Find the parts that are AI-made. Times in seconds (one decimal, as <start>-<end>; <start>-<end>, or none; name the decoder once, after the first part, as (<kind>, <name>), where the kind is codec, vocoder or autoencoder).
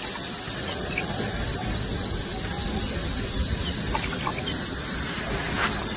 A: 4.3-5.2 (vocoder, BigVGAN v2)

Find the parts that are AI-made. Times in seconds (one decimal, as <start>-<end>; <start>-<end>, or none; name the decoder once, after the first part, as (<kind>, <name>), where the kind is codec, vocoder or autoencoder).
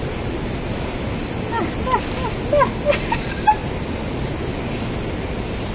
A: 3.6-4.3 (vocoder, BigVGAN v2)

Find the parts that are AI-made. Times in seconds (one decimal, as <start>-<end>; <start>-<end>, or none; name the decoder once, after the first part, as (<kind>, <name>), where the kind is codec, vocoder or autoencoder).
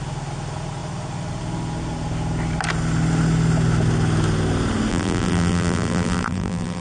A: 4.9-6.8 (vocoder, BigVGAN v2)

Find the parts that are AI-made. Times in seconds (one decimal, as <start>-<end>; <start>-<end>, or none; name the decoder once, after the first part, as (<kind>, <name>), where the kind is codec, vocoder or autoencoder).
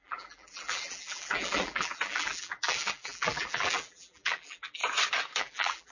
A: 0.0-4.8 (vocoder, BigVGAN v2); 5.4-5.9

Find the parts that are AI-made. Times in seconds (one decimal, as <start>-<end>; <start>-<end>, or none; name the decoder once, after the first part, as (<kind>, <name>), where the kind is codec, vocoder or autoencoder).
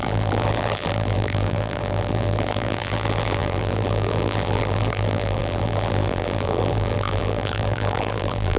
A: 0.0-8.6 (vocoder, BigVGAN v2)